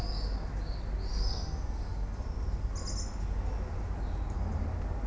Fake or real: real